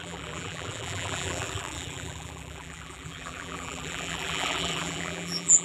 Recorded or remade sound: remade